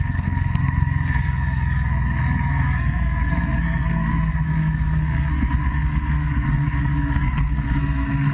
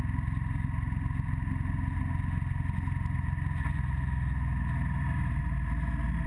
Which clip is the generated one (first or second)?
first